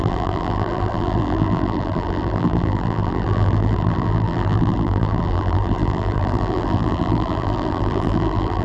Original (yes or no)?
no